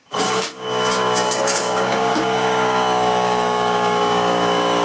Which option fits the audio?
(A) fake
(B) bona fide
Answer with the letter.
A